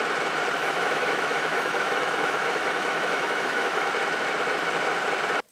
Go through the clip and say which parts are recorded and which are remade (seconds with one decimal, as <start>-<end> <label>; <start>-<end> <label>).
0.0-0.6 recorded; 0.6-3.9 remade; 3.9-5.5 recorded

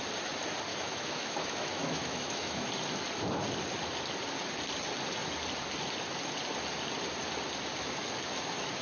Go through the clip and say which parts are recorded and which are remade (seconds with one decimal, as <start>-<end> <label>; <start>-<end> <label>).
0.0-0.7 recorded; 0.7-2.7 remade; 2.7-8.8 recorded